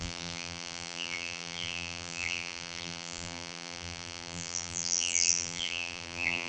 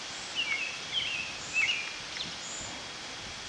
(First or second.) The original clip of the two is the second